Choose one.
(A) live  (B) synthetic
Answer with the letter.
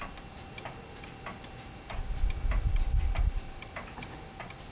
A